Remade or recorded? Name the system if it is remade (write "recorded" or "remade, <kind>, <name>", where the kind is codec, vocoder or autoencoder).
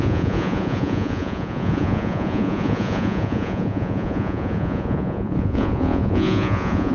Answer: remade, vocoder, Vocos